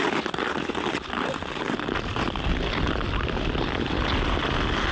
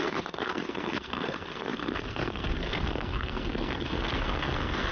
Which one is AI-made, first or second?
second